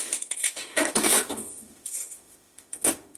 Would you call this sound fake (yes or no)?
yes